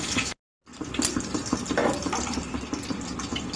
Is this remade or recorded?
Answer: recorded